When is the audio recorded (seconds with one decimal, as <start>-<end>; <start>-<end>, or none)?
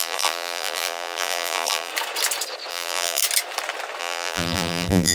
1.9-2.7; 3.2-4.0